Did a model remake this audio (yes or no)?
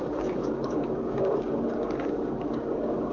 yes